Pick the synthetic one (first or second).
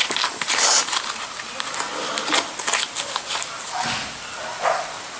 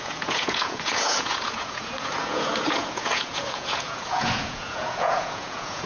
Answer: second